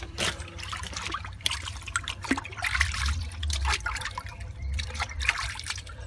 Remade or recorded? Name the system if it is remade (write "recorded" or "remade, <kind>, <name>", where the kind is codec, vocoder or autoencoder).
remade, vocoder, BigVGAN v2